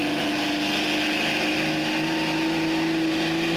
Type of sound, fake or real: real